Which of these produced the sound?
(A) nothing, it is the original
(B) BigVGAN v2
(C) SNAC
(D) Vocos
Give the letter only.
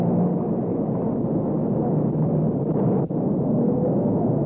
A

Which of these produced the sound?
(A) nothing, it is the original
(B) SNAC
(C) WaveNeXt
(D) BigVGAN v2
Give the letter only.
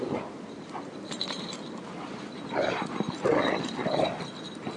A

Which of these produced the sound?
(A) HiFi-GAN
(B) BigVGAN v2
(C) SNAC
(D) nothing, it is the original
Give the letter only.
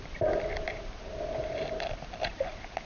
D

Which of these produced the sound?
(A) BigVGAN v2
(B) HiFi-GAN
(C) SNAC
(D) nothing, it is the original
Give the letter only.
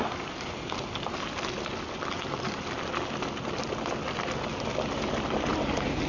D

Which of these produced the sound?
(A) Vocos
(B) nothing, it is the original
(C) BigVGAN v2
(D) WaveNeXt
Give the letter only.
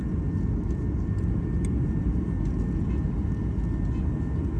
B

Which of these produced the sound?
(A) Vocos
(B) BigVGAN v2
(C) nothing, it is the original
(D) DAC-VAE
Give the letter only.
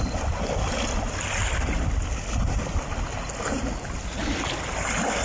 C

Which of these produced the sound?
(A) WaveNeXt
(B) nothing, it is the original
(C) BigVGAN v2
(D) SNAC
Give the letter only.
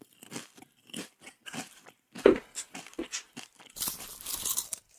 C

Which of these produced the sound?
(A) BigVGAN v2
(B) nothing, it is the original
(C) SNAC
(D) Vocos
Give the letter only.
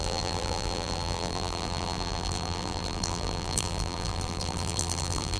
A